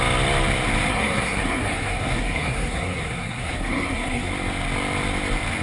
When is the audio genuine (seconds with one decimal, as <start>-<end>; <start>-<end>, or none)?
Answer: 0.0-0.9; 4.3-5.6